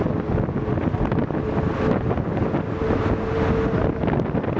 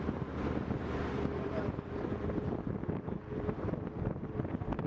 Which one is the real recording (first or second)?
first